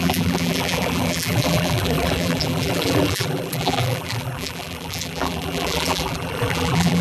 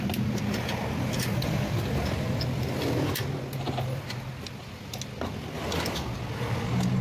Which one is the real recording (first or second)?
second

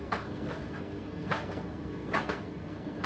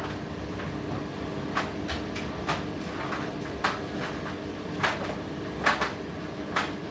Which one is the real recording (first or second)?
second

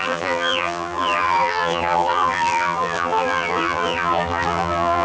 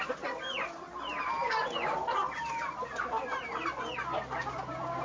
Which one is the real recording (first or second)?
second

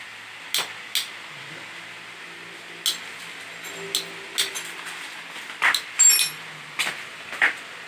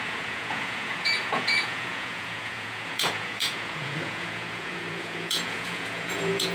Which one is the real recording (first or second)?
first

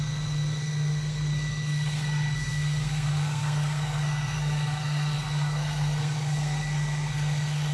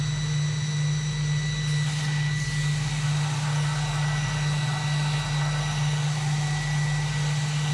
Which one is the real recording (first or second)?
second